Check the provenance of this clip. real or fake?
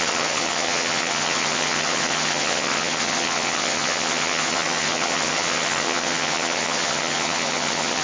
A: fake